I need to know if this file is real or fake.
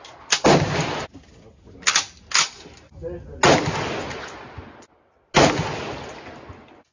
real